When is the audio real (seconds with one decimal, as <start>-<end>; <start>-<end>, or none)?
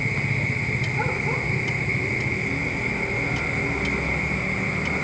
0.0-5.0